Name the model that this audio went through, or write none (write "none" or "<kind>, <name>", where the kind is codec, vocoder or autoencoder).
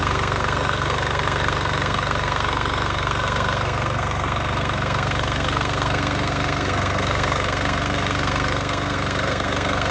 codec, SNAC